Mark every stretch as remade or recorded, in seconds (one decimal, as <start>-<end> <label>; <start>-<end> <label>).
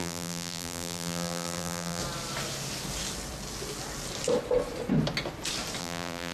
0.0-2.0 remade; 2.0-5.8 recorded; 5.8-6.3 remade